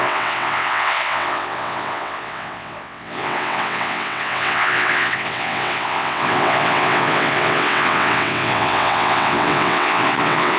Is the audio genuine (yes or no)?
no